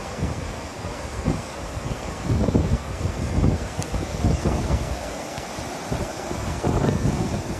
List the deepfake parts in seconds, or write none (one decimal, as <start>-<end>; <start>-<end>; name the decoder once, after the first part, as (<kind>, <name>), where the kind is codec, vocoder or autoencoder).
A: 0.0-5.5 (codec, SNAC); 6.0-7.6